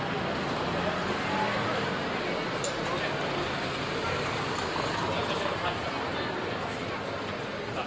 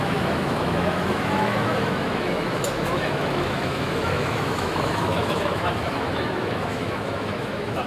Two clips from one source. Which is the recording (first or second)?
first